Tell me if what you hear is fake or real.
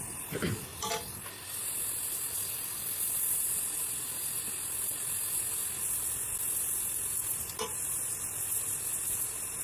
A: real